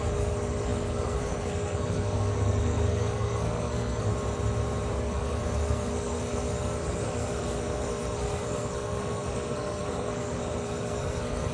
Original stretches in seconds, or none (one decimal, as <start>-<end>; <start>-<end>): 4.1-4.9